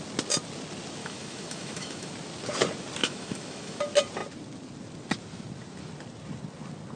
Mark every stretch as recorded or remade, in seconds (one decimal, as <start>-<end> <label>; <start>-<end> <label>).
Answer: 0.0-1.0 recorded; 1.0-2.1 remade; 2.1-3.0 recorded; 3.0-3.8 remade; 3.8-7.0 recorded

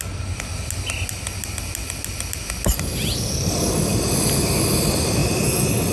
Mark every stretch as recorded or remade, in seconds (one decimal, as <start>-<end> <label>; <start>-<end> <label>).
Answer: 0.0-5.9 recorded

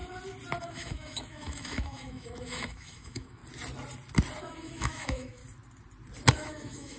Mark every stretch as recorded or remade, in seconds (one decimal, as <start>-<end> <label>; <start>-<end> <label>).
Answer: 0.0-0.6 recorded; 0.6-3.4 remade; 3.4-4.4 recorded; 4.4-5.4 remade; 5.4-6.3 recorded; 6.3-7.0 remade